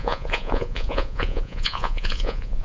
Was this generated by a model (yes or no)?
yes